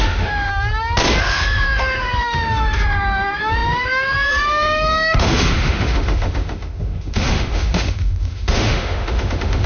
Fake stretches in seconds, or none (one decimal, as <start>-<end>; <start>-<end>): 0.0-0.5; 1.2-9.7